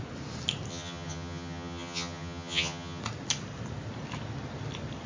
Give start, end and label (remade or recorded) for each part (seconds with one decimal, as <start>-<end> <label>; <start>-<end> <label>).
0.0-0.7 recorded; 0.7-3.0 remade; 3.0-5.1 recorded